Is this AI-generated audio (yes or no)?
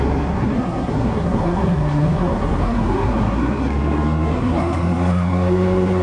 yes